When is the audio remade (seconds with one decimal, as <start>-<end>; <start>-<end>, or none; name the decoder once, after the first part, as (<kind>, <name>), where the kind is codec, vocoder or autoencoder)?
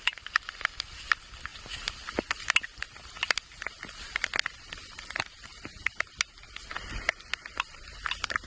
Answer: none